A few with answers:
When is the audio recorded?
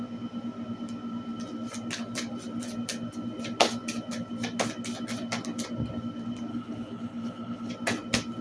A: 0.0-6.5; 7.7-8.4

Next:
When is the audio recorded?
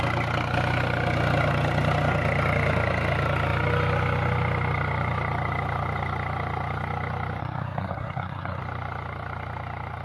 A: 0.0-7.4; 8.6-10.0